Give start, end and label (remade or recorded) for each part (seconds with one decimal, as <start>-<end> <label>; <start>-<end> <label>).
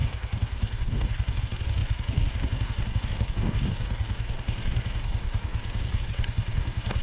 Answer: 0.0-7.0 remade